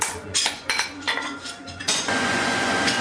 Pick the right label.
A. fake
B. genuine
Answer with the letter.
A